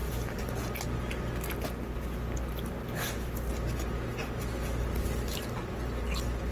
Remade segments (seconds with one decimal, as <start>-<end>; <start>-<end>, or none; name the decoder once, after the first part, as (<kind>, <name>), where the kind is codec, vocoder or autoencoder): none